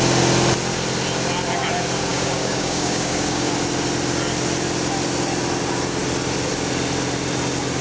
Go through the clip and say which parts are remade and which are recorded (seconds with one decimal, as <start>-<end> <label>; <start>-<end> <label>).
0.0-2.1 recorded; 2.1-3.5 remade; 3.5-7.8 recorded